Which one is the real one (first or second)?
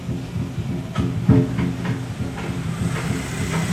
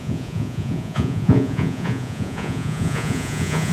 first